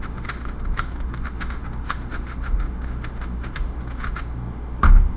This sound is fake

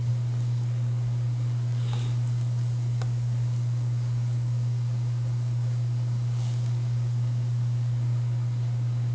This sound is fake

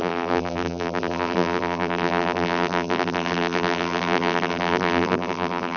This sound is fake